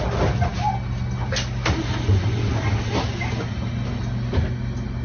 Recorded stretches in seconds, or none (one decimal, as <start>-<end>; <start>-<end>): 0.0-5.0